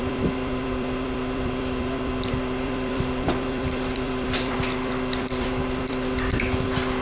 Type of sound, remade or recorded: remade